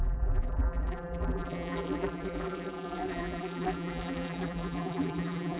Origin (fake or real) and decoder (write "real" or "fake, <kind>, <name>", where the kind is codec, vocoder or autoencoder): fake, vocoder, BigVGAN v2